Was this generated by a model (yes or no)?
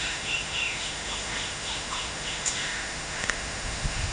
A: yes